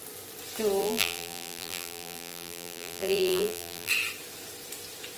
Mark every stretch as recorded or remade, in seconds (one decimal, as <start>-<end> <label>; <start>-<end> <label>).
0.0-0.8 recorded; 0.8-3.9 remade; 3.9-5.2 recorded